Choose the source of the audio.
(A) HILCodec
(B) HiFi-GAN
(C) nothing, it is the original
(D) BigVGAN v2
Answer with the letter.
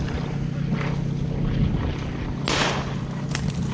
C